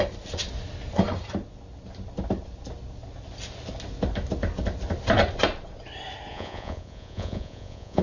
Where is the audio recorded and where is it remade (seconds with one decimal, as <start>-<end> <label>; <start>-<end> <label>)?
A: 0.0-6.3 recorded; 6.3-8.0 remade